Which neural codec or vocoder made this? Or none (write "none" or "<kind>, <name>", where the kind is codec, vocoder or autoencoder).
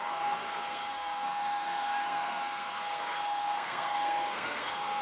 codec, SNAC